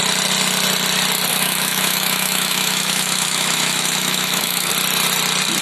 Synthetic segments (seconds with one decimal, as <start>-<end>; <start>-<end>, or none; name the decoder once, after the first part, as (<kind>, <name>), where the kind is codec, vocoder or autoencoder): 1.3-4.7 (autoencoder, DAC-VAE)